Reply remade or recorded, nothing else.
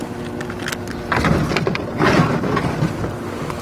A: recorded